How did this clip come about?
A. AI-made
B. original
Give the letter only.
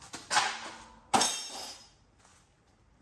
B